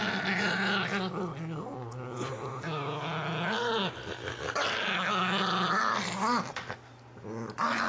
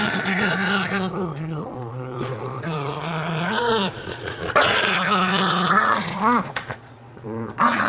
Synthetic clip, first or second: second